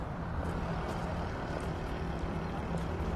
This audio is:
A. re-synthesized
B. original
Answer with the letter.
A